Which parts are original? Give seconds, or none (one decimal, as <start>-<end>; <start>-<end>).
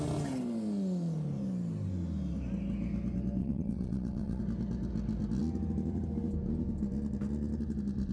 0.0-3.4; 4.4-8.1